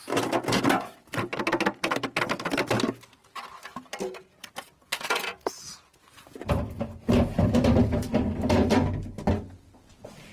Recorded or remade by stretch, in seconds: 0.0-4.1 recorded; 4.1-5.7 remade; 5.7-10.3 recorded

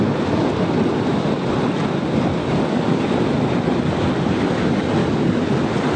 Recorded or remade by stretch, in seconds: 0.0-2.4 recorded; 2.4-3.0 remade; 3.0-5.0 recorded; 5.0-5.5 remade; 5.5-6.0 recorded

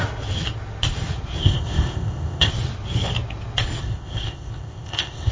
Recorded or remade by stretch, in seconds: 0.0-1.4 recorded; 1.4-2.5 remade; 2.5-3.8 recorded; 3.8-5.3 remade

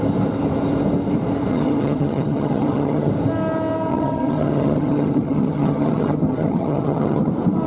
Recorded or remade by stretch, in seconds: 0.0-1.5 recorded; 1.5-3.1 remade; 3.1-3.9 recorded; 3.9-7.3 remade; 7.3-7.7 recorded